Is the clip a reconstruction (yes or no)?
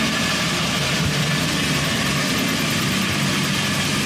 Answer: no